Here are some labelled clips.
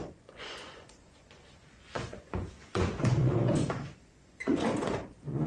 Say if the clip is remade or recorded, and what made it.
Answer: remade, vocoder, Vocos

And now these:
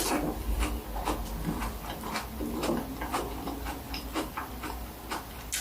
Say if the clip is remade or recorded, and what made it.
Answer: recorded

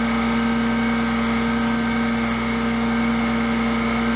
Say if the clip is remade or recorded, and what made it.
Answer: recorded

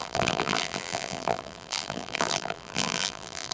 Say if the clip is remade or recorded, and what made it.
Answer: remade, vocoder, BigVGAN v2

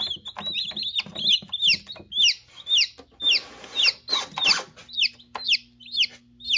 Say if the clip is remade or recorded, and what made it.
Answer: recorded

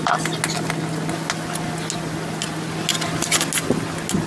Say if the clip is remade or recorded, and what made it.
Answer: recorded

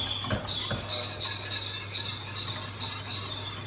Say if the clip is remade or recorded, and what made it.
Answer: recorded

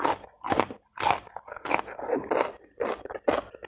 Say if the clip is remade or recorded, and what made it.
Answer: remade, vocoder, BigVGAN v2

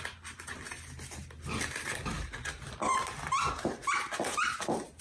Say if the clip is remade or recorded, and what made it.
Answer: recorded